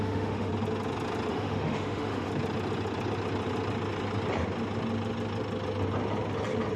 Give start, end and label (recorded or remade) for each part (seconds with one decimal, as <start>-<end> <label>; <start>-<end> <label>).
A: 0.0-0.5 remade; 0.5-1.3 recorded; 1.3-2.3 remade; 2.3-6.8 recorded